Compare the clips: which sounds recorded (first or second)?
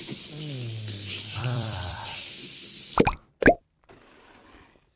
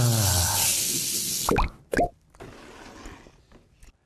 second